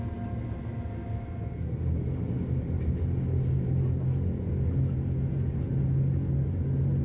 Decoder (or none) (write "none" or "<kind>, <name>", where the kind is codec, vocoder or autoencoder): none